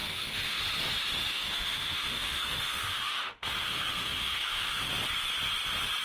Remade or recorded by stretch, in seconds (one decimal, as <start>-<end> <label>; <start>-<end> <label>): 0.0-0.6 remade; 0.6-1.3 recorded; 1.3-4.9 remade; 4.9-6.0 recorded